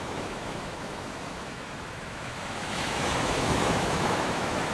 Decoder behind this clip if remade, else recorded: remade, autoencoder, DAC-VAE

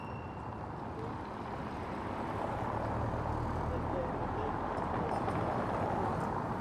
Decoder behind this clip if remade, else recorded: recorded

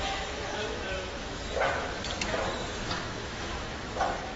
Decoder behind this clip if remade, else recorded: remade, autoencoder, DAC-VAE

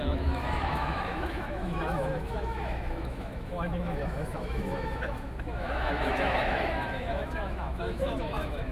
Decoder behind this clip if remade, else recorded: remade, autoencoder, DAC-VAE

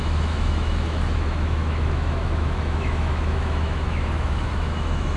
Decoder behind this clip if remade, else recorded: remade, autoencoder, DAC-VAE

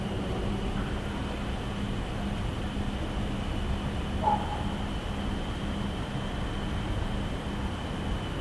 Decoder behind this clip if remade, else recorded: recorded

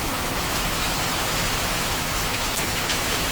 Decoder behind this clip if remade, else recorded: remade, autoencoder, DAC-VAE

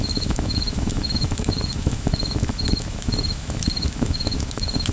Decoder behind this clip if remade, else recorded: remade, autoencoder, DAC-VAE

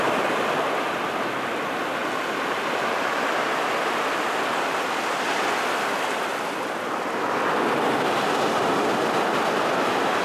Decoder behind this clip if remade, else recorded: recorded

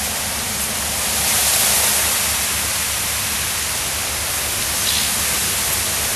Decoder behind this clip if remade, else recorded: recorded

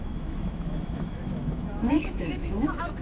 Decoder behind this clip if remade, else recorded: remade, autoencoder, DAC-VAE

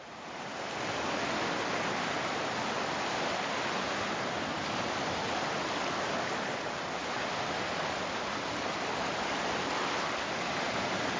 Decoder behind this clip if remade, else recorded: recorded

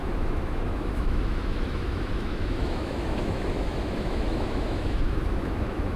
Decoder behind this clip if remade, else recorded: remade, autoencoder, DAC-VAE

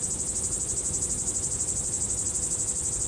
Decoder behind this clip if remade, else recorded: recorded